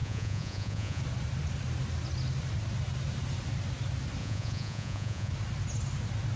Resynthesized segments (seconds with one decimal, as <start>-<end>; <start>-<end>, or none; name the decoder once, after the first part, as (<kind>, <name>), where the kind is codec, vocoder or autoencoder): 0.0-1.0 (vocoder, Vocos); 4.2-5.3